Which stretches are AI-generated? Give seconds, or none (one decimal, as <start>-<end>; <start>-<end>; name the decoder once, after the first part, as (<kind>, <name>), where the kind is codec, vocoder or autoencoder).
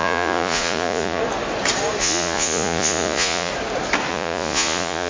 0.0-1.2 (vocoder, Vocos); 2.0-3.5; 4.1-5.1